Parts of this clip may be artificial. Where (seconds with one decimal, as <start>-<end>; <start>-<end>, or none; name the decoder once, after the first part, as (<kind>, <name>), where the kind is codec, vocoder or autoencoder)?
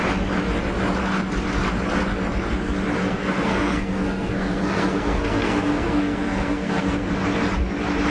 3.0-7.1 (codec, SNAC)